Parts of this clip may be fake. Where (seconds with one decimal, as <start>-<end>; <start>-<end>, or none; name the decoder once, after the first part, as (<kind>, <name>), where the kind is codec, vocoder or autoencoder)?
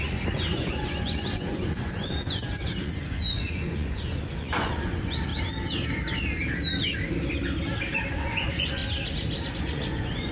0.0-5.3 (vocoder, Vocos); 8.1-8.8; 9.5-10.3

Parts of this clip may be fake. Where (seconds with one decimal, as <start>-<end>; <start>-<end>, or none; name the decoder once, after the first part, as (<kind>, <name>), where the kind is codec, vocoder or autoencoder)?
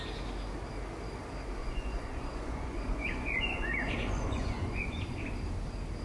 1.6-5.2 (vocoder, Vocos)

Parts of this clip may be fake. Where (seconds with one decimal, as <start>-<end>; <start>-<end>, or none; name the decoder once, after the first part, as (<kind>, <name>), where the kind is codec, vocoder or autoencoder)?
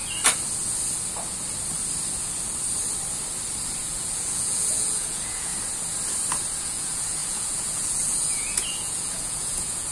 3.8-5.5 (vocoder, Vocos); 6.6-9.9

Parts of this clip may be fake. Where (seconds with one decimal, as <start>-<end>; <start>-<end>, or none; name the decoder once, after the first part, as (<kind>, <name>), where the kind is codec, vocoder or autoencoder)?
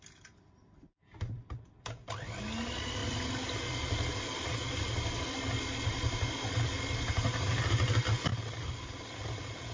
none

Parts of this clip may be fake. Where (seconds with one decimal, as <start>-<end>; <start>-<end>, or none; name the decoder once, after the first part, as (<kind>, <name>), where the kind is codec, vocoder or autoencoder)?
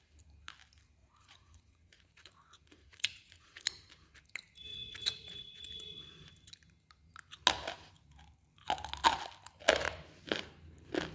1.0-3.6 (vocoder, Vocos); 4.7-6.3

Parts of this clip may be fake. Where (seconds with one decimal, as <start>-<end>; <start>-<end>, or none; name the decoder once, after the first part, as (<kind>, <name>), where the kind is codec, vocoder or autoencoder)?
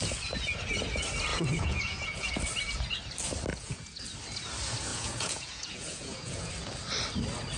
1.3-2.3 (vocoder, Vocos); 3.5-4.0; 4.9-6.5